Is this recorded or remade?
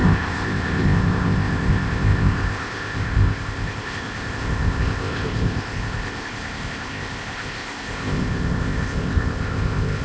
remade